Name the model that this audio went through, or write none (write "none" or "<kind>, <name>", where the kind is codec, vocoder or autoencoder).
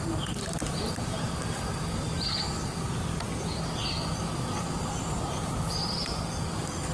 none